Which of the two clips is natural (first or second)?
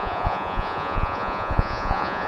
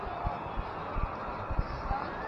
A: second